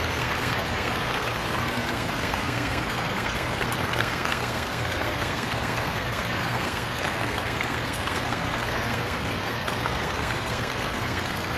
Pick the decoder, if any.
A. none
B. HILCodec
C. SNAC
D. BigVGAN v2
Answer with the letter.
C